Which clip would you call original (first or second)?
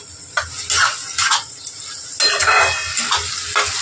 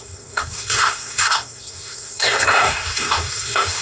first